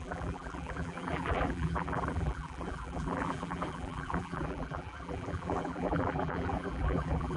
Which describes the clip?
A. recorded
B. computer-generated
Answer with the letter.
B